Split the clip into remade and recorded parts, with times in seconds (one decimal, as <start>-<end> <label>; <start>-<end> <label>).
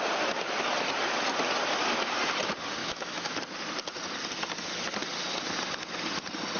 0.0-2.8 recorded; 2.8-3.4 remade; 3.4-6.6 recorded